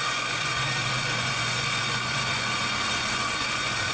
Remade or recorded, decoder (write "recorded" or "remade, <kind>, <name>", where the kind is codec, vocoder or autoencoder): remade, vocoder, Vocos